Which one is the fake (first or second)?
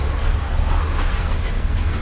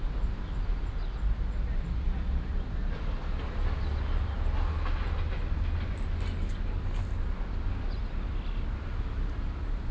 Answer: first